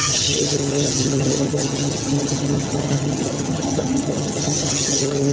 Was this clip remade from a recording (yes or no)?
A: yes